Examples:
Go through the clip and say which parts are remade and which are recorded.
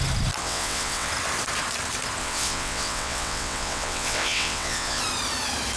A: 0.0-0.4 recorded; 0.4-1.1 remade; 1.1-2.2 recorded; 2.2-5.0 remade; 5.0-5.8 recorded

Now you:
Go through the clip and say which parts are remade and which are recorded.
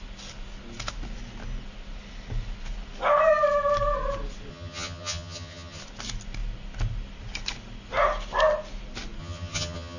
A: 0.0-4.5 recorded; 4.5-5.8 remade; 5.8-9.2 recorded; 9.2-10.0 remade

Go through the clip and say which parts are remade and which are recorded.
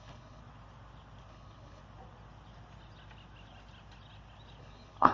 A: 0.0-0.4 remade; 0.4-1.3 recorded; 1.3-1.8 remade; 1.8-4.6 recorded; 4.6-5.1 remade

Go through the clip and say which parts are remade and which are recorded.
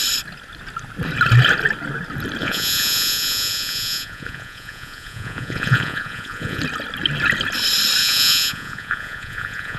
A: 0.0-2.4 recorded; 2.4-6.6 remade; 6.6-8.0 recorded; 8.0-9.8 remade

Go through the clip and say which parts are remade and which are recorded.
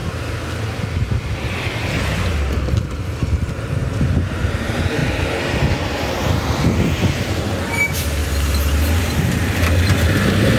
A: 0.0-3.5 recorded; 3.5-5.0 remade; 5.0-7.3 recorded; 7.3-8.2 remade; 8.2-9.0 recorded; 9.0-10.6 remade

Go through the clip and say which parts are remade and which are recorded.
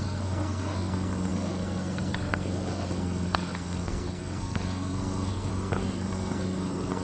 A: 0.0-7.0 remade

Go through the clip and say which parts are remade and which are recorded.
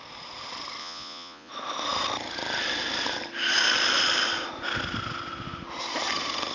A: 0.0-0.8 recorded; 0.8-1.5 remade; 1.5-6.5 recorded